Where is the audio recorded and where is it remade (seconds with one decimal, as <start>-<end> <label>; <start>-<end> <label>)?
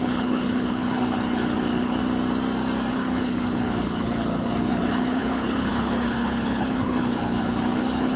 0.0-2.0 remade; 2.0-2.9 recorded; 2.9-8.2 remade